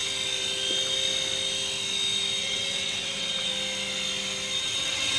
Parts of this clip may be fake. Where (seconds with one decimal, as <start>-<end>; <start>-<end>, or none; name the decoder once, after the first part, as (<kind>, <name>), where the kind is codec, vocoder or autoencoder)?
2.4-3.5 (vocoder, WaveNeXt); 4.6-5.2